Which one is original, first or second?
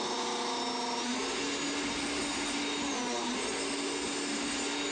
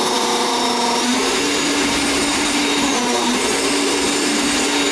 first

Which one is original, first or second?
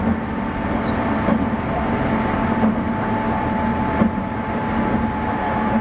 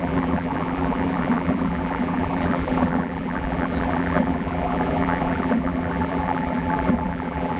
first